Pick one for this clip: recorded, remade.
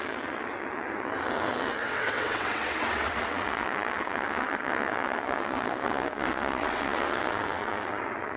remade